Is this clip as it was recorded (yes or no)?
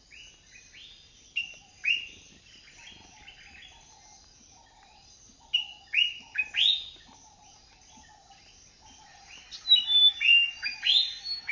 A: yes